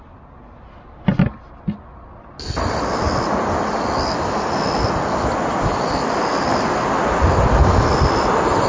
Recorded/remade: recorded